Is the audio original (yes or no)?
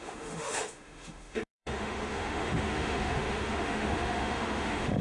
no